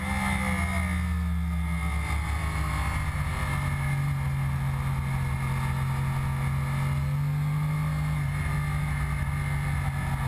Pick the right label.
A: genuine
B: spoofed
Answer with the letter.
A